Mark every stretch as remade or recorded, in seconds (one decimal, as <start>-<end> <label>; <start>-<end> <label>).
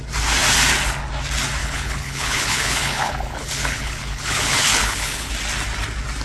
0.0-1.6 recorded; 1.6-5.3 remade; 5.3-6.2 recorded